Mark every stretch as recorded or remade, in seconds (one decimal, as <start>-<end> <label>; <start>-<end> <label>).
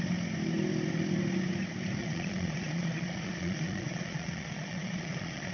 0.0-2.0 recorded; 2.0-5.5 remade